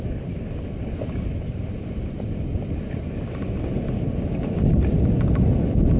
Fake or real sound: real